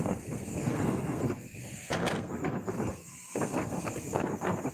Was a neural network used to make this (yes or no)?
yes